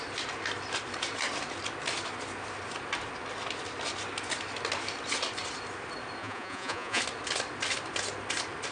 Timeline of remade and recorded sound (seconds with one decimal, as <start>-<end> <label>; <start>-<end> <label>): 0.0-6.2 recorded; 6.2-7.0 remade; 7.0-8.7 recorded